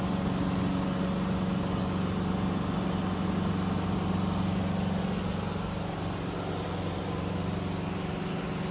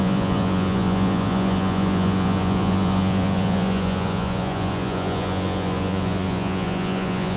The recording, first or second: first